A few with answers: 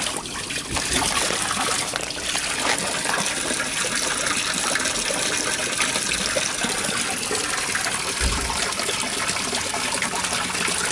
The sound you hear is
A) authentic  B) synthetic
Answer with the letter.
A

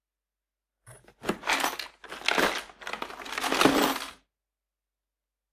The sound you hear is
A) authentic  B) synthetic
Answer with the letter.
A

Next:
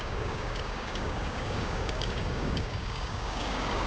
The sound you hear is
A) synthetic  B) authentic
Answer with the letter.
A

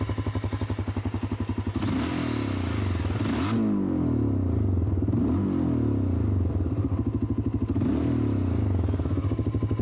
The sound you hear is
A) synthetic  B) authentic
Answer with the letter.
B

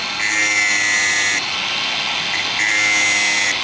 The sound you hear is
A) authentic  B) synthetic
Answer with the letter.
A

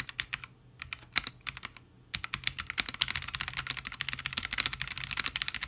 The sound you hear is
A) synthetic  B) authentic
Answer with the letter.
B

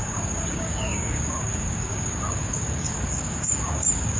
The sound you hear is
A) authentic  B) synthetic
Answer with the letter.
B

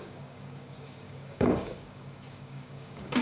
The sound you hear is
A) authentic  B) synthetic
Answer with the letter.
B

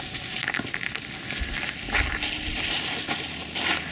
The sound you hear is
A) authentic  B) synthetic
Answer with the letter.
A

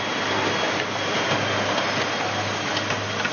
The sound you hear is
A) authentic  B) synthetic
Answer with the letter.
A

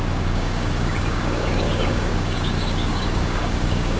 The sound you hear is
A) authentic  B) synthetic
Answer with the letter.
B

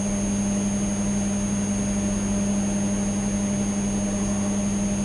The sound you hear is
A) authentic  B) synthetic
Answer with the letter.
A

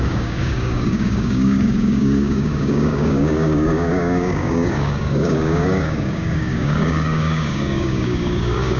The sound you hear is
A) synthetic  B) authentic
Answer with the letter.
A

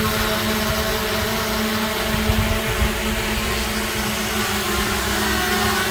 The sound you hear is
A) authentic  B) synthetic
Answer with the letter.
A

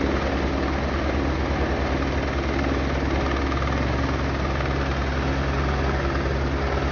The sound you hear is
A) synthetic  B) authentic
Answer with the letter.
B